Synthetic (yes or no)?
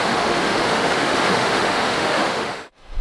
yes